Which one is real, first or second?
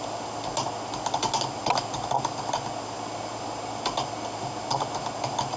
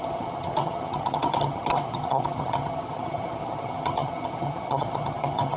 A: first